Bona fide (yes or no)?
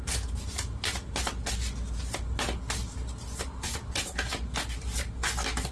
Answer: yes